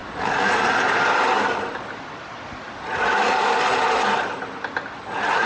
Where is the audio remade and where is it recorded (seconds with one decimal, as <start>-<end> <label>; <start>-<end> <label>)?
0.0-5.5 recorded

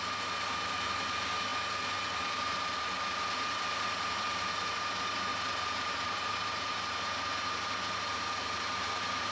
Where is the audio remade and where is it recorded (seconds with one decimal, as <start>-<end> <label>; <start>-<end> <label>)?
0.0-5.3 recorded; 5.3-6.7 remade; 6.7-9.3 recorded

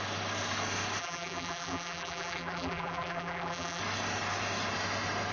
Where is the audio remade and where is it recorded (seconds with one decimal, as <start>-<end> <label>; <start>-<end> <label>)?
0.0-1.0 recorded; 1.0-3.8 remade; 3.8-5.3 recorded

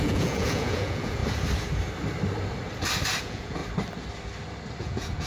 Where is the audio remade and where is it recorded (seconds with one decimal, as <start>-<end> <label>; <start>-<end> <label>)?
0.0-1.2 remade; 1.2-3.2 recorded; 3.2-3.6 remade; 3.6-4.8 recorded; 4.8-5.3 remade

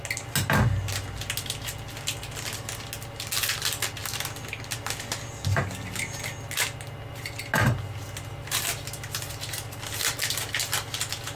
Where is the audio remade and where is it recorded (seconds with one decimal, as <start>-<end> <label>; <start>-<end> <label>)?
0.0-11.4 recorded

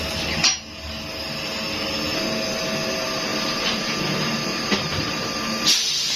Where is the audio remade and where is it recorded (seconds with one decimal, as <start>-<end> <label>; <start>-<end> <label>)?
0.0-3.3 recorded; 3.3-3.8 remade; 3.8-4.5 recorded; 4.5-5.3 remade; 5.3-6.2 recorded

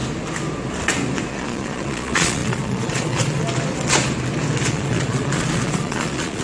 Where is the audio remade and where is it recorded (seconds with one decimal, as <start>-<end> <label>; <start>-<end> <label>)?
0.0-1.3 recorded; 1.3-3.4 remade; 3.4-4.7 recorded; 4.7-6.4 remade